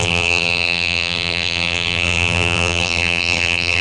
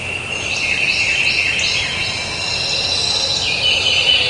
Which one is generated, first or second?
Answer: first